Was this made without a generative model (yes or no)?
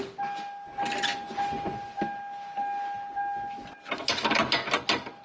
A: yes